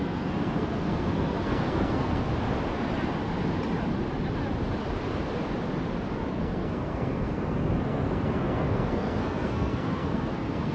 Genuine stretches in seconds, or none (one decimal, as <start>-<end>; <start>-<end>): 2.3-6.3

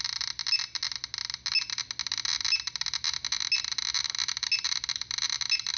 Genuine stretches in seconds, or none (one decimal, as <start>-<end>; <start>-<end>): 0.0-5.8

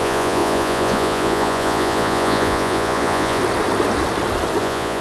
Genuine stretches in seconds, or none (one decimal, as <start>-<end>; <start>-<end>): 3.4-4.6

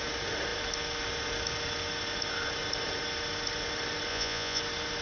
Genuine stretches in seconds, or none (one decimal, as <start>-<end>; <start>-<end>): 0.0-4.1; 4.6-5.0

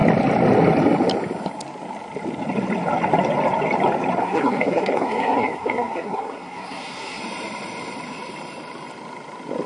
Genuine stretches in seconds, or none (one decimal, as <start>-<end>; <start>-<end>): 0.0-4.2; 7.2-9.7

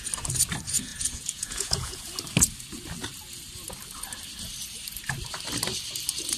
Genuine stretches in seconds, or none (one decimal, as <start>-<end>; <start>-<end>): 0.0-0.9; 2.0-6.4

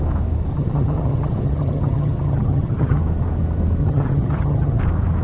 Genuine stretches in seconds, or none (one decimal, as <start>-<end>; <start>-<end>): 0.0-0.5; 3.0-3.8; 4.8-5.2